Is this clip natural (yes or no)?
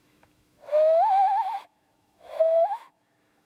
no